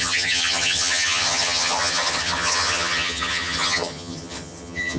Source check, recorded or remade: remade